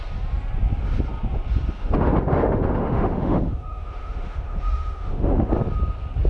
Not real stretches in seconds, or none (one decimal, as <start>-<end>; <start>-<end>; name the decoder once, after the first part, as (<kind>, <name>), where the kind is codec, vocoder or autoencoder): 1.8-5.5 (autoencoder, DAC-VAE)